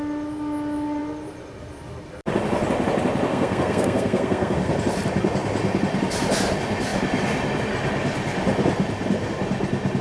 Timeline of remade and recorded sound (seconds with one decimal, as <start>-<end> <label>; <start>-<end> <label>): 0.0-3.3 recorded; 3.3-4.7 remade; 4.7-10.0 recorded